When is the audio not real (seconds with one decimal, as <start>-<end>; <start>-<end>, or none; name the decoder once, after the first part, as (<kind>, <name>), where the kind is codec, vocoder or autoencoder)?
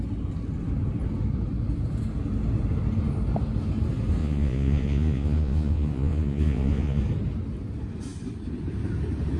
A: 4.2-7.0 (vocoder, Vocos)